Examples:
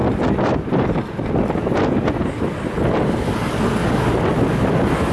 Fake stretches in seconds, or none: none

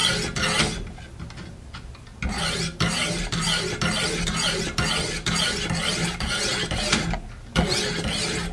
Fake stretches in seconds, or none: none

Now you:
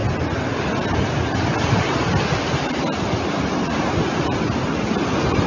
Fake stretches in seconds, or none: none

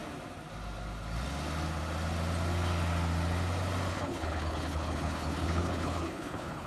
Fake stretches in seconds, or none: 3.9-6.7 (codec, HILCodec)

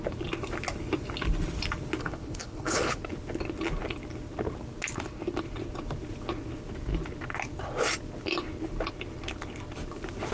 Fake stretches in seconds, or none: 2.0-3.0 (codec, HILCodec)

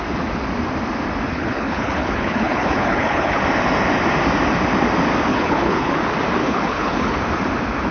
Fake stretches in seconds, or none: 1.3-3.4 (codec, HILCodec); 5.3-5.9; 6.4-7.2

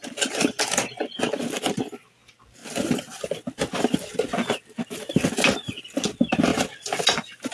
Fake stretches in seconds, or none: none

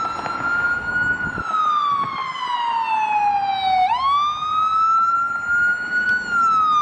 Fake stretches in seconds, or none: none